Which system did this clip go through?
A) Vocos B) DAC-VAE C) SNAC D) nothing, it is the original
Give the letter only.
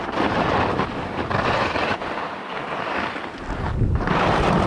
D